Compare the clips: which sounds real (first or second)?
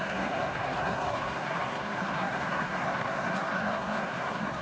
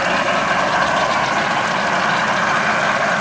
second